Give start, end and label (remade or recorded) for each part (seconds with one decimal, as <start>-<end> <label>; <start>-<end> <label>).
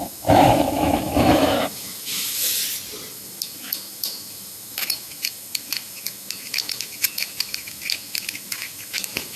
0.0-2.6 remade; 2.6-3.1 recorded; 3.1-9.4 remade